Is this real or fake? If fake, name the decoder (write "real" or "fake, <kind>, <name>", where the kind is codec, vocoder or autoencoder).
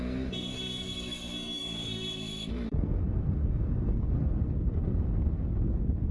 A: fake, codec, SNAC